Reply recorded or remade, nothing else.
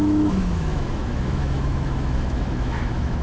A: remade